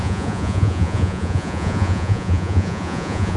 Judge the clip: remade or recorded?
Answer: remade